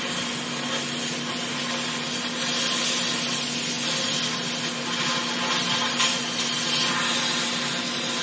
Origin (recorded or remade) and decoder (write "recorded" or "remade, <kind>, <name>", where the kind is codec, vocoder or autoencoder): recorded